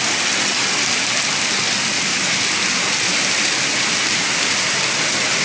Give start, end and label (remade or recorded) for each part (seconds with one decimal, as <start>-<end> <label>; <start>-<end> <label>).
0.0-2.1 recorded; 2.1-3.9 remade; 3.9-5.4 recorded